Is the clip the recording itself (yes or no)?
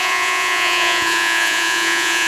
no